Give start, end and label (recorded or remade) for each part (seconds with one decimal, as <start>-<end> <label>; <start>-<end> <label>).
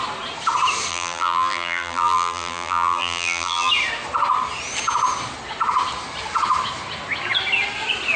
0.0-0.9 recorded; 0.9-3.7 remade; 3.7-8.2 recorded